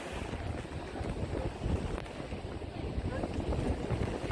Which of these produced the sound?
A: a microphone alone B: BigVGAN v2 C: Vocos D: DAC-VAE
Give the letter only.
A